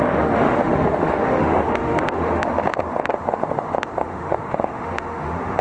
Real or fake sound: fake